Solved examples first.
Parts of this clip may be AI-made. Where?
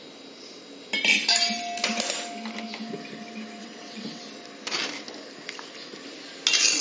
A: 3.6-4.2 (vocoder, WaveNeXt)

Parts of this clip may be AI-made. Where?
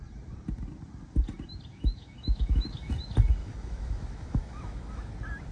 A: 1.7-2.9 (autoencoder, DAC-VAE); 3.4-5.1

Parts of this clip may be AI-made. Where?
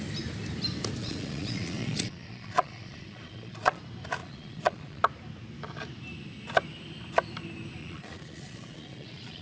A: 1.0-3.8 (vocoder, Vocos); 4.2-5.0; 7.8-9.4